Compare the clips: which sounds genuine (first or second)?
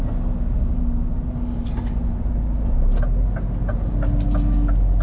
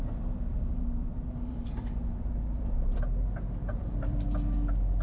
first